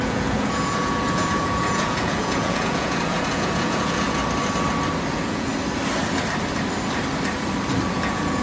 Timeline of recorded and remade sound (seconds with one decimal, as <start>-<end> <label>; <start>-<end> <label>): 0.0-4.2 remade; 4.2-5.1 recorded; 5.1-5.5 remade; 5.5-7.9 recorded; 7.9-8.4 remade